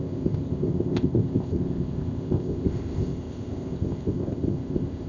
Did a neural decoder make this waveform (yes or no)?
yes